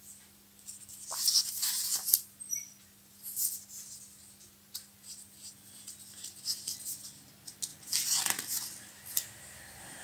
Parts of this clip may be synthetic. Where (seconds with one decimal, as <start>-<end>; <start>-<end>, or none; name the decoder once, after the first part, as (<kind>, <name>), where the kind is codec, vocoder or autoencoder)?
none